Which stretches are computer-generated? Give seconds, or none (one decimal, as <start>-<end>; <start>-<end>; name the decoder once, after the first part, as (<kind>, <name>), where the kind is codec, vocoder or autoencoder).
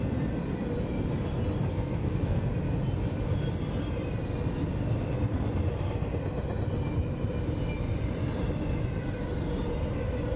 1.7-2.5 (codec, SNAC)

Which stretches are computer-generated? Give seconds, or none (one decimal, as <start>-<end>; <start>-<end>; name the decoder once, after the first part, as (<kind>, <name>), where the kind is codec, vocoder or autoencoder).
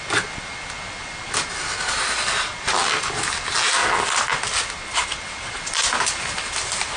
none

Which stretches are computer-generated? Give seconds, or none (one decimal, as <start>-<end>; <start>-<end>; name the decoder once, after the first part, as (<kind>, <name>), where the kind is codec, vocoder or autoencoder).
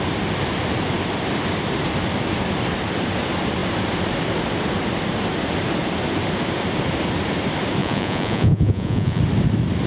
7.8-9.2 (vocoder, Vocos)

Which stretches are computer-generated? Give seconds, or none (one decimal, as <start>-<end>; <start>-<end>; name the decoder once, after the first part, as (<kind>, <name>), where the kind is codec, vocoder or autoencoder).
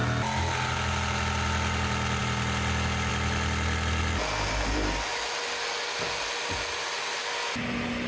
none